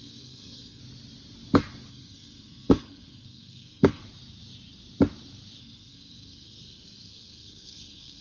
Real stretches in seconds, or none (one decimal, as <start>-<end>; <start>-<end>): 0.8-1.9; 4.0-5.6